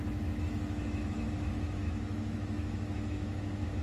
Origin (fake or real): fake